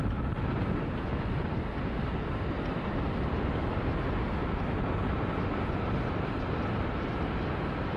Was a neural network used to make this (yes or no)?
no